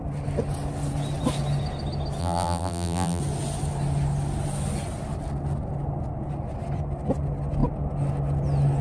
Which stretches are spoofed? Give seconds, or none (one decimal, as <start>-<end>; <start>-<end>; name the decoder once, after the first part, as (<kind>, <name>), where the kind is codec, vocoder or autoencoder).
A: 2.2-3.2 (vocoder, BigVGAN v2)